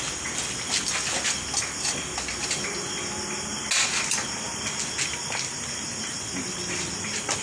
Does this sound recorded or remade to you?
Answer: recorded